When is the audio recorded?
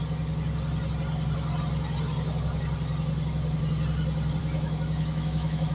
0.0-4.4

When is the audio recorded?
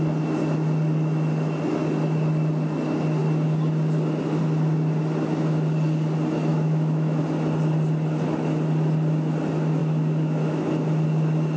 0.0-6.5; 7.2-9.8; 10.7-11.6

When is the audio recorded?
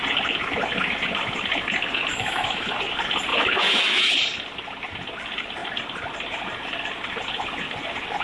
0.0-2.1; 2.7-3.3; 4.0-8.2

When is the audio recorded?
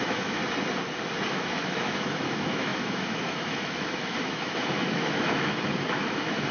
0.4-1.3